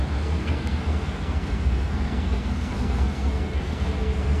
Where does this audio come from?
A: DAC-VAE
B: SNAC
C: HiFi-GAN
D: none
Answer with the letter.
B